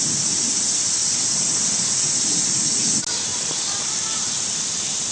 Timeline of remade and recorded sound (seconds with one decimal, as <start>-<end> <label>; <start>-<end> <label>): 0.0-1.0 recorded; 1.0-2.5 remade; 2.5-3.3 recorded; 3.3-5.1 remade